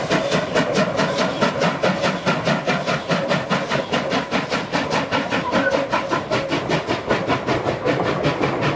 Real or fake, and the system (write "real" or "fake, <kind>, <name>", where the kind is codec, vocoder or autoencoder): real